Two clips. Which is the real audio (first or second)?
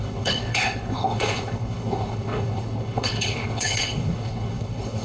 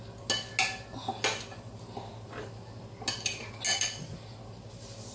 second